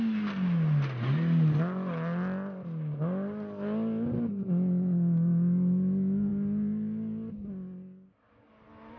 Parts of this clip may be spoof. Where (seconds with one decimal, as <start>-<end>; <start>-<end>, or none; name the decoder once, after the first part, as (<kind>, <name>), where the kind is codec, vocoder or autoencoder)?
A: none